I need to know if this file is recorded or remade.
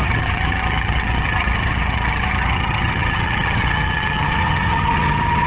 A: remade